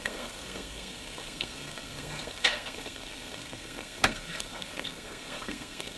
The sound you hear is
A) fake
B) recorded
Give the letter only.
A